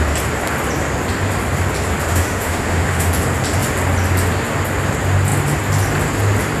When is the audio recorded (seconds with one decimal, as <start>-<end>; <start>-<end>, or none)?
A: 0.0-2.1; 3.1-6.6